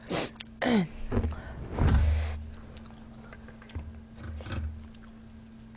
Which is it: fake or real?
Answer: real